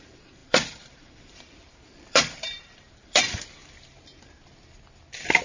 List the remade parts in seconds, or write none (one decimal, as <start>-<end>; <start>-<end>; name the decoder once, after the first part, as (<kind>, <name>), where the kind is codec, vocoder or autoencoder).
0.0-3.6 (vocoder, BigVGAN v2)